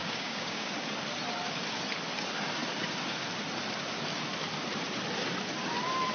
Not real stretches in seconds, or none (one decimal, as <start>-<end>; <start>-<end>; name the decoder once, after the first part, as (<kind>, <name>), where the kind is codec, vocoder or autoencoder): 0.0-0.7 (codec, DAC)